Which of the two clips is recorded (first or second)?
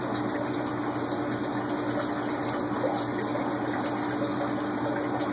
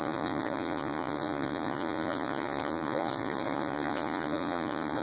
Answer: first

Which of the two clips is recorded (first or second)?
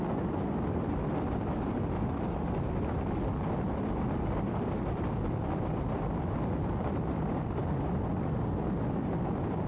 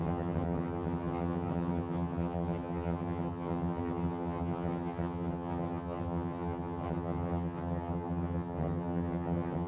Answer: first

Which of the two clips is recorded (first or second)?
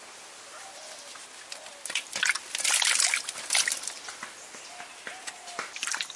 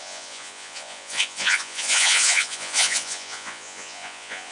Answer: first